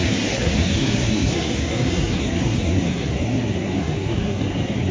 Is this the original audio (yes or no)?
no